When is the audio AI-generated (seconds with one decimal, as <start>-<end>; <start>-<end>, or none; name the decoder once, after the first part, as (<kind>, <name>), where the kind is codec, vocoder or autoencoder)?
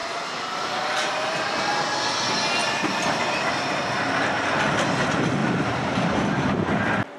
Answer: 0.0-1.5 (vocoder, BigVGAN v2); 2.6-4.7; 5.4-7.2